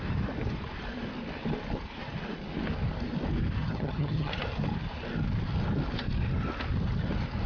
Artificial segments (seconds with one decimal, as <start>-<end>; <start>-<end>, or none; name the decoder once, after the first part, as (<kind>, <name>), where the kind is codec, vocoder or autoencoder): 3.6-4.3 (vocoder, HiFi-GAN)